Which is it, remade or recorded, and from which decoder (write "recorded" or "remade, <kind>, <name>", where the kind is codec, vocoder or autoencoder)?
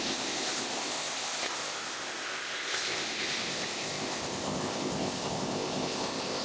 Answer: remade, codec, ZipCodec